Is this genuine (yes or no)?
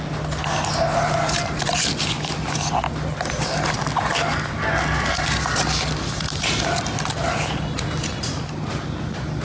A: yes